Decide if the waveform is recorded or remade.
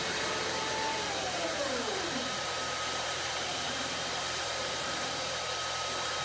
remade